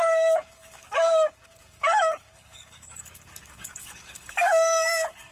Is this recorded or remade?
remade